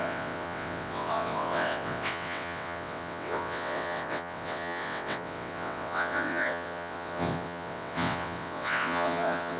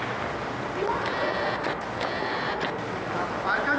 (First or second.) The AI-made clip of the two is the first